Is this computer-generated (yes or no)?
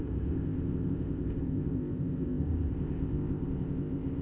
yes